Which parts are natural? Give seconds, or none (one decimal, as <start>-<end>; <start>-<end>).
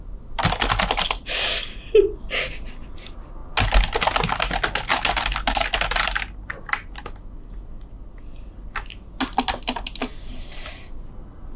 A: 0.0-10.3; 10.8-11.6